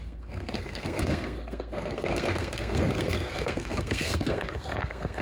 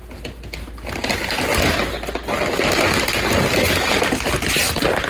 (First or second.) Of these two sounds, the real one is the second